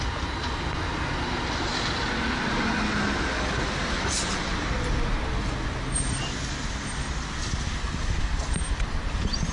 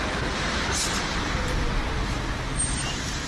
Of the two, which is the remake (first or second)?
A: second